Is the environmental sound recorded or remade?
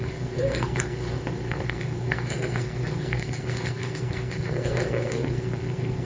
remade